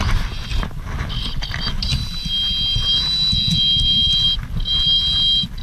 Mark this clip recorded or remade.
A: recorded